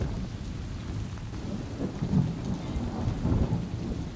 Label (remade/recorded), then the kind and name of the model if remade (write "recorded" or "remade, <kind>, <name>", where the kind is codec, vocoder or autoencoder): recorded